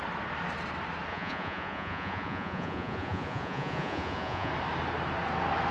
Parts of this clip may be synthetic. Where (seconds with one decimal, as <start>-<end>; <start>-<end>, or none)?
1.1-4.5